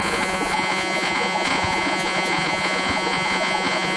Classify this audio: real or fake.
fake